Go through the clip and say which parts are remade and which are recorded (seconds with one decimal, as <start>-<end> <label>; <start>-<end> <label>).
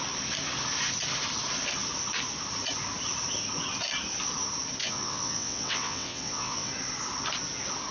0.0-4.8 recorded; 4.8-6.7 remade; 6.7-7.9 recorded